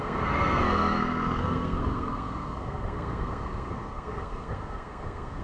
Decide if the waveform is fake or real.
fake